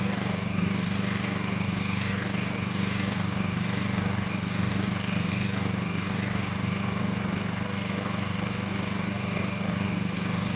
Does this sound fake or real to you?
fake